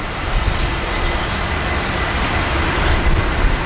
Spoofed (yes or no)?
no